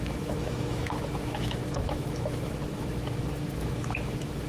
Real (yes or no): no